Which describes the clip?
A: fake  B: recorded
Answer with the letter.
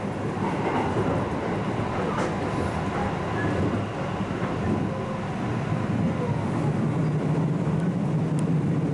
B